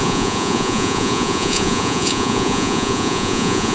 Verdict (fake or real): fake